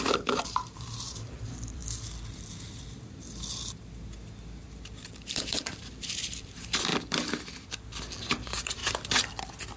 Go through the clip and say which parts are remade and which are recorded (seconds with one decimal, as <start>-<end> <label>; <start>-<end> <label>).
0.0-1.8 remade; 1.8-5.1 recorded; 5.1-6.9 remade; 6.9-8.1 recorded; 8.1-8.8 remade; 8.8-9.8 recorded